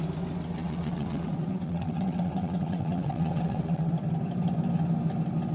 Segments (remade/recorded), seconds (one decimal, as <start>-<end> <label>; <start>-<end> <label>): 0.0-0.6 recorded; 0.6-3.9 remade; 3.9-5.5 recorded

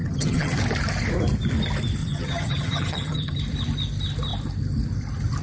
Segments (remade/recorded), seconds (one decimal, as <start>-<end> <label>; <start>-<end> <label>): 0.0-0.6 remade; 0.6-2.0 recorded; 2.0-3.4 remade; 3.4-5.4 recorded

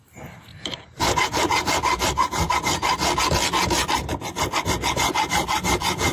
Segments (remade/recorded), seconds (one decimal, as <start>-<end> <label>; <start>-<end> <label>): 0.0-0.5 recorded; 0.5-2.5 remade; 2.5-6.1 recorded

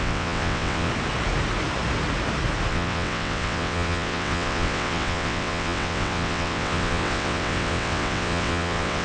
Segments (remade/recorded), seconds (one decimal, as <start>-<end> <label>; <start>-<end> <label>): 0.0-0.9 remade; 0.9-2.7 recorded; 2.7-9.0 remade

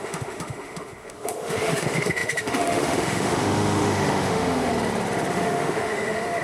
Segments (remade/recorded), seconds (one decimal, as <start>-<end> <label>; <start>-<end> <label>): 0.0-4.7 remade; 4.7-5.3 recorded; 5.3-6.4 remade

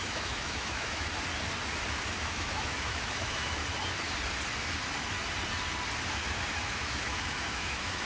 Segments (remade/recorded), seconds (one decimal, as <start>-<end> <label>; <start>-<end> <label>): 0.0-1.1 remade; 1.1-2.1 recorded; 2.1-3.6 remade; 3.6-6.6 recorded; 6.6-8.1 remade